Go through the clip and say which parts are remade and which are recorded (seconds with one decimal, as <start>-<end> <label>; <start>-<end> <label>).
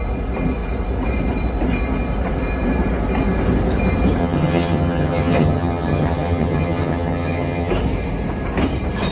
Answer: 0.0-4.2 recorded; 4.2-7.7 remade; 7.7-9.1 recorded